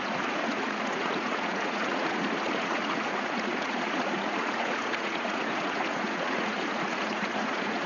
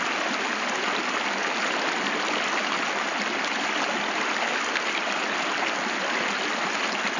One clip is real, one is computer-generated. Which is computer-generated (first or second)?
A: first